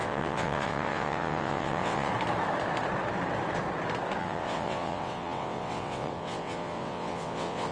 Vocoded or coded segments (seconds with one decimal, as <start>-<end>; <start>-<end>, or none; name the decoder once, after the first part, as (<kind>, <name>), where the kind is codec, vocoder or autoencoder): 0.0-2.1 (vocoder, WaveNeXt); 4.2-7.7